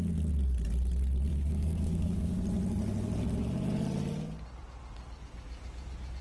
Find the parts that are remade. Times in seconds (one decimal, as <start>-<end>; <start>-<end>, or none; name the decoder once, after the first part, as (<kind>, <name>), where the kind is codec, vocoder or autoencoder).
1.3-2.4 (codec, DAC)